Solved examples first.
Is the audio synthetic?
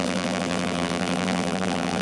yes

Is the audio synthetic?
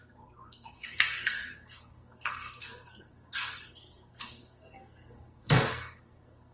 yes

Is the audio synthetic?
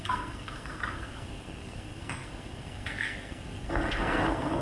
yes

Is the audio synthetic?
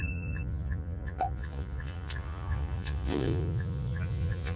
yes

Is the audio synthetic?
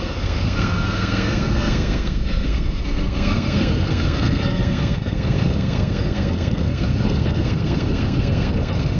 yes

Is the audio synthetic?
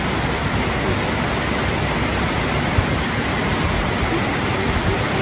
no